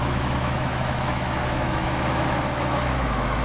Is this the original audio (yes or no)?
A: no